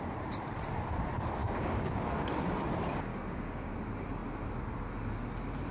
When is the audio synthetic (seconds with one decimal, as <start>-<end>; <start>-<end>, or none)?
1.4-1.9; 3.1-3.7